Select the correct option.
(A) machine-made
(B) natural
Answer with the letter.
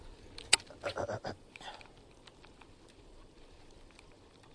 B